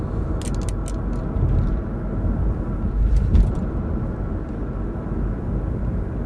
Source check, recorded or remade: recorded